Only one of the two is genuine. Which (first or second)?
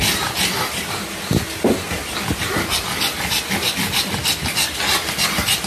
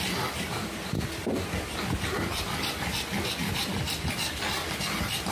first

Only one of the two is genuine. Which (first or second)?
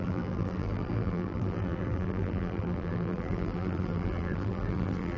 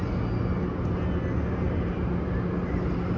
second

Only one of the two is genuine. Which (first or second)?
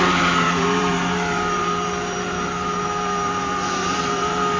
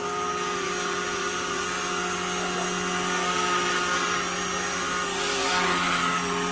second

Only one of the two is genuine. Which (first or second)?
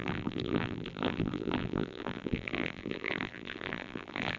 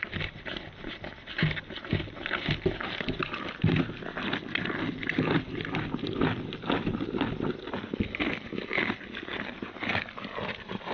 second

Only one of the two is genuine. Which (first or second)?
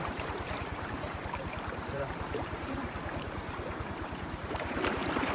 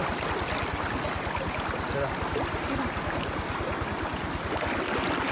second